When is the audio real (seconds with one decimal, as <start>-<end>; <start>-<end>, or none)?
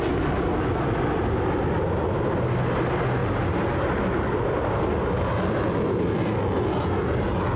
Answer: 0.0-7.6